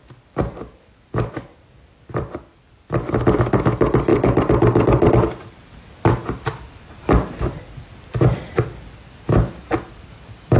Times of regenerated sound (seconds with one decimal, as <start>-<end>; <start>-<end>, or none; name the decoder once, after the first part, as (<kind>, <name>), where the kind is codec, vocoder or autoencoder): 0.0-10.6 (vocoder, BigVGAN v2)